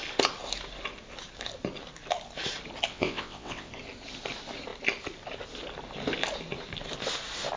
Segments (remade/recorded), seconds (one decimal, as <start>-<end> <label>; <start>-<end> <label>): 0.0-2.9 recorded; 2.9-3.7 remade; 3.7-7.6 recorded

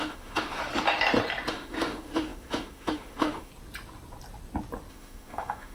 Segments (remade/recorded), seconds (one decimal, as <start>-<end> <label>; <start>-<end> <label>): 0.0-0.6 remade; 0.6-1.5 recorded; 1.5-3.5 remade; 3.5-4.9 recorded; 4.9-5.7 remade

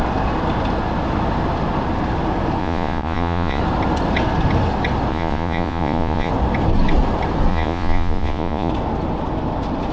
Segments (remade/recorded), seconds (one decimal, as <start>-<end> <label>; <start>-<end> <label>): 0.0-2.6 recorded; 2.6-3.6 remade; 3.6-5.1 recorded; 5.1-6.3 remade; 6.3-7.5 recorded; 7.5-8.7 remade; 8.7-9.9 recorded

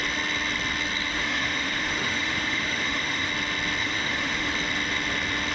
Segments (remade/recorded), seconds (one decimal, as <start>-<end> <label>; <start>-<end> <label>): 0.0-1.1 recorded; 1.1-3.3 remade; 3.3-3.8 recorded; 3.8-4.5 remade; 4.5-5.5 recorded